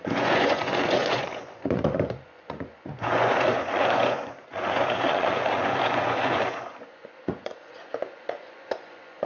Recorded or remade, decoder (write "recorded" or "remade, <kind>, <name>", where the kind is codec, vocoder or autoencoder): remade, vocoder, Vocos